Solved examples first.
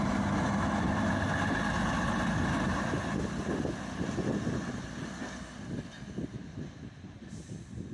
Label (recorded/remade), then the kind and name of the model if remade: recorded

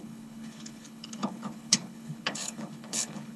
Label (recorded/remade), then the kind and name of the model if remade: remade, codec, HILCodec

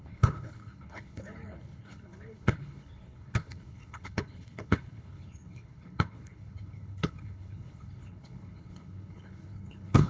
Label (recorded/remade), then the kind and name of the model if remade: remade, codec, HILCodec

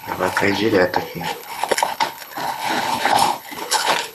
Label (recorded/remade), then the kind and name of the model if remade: remade, codec, HILCodec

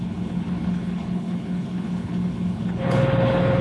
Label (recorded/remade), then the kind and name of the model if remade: remade, codec, HILCodec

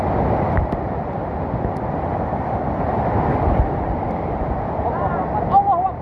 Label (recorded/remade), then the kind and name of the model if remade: recorded